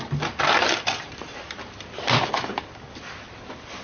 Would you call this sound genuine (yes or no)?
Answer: no